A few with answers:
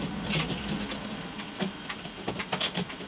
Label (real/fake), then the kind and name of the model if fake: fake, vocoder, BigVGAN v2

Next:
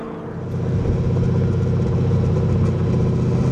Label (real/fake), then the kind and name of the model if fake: real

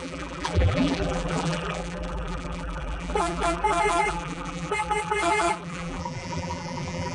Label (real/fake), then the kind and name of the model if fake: fake, vocoder, BigVGAN v2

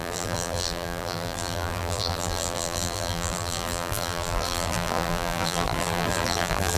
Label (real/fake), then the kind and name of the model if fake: fake, vocoder, BigVGAN v2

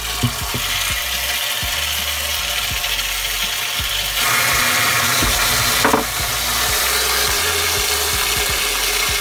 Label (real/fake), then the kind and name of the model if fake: real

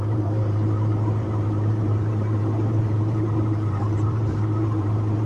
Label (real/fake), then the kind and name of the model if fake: fake, vocoder, BigVGAN v2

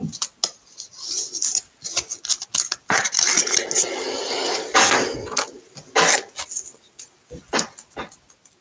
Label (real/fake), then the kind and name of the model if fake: real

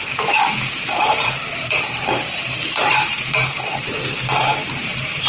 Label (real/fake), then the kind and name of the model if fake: fake, vocoder, BigVGAN v2